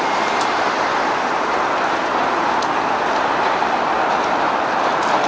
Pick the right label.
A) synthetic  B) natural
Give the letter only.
B